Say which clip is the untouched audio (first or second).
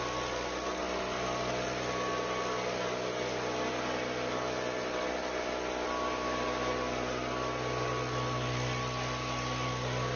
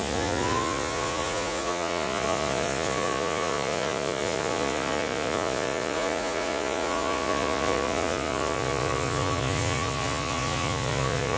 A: first